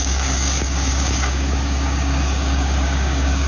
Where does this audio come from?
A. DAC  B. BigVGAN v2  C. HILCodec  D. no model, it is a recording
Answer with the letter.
A